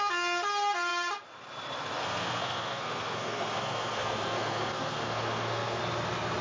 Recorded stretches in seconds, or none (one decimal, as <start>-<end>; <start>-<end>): 0.0-2.0; 5.8-6.4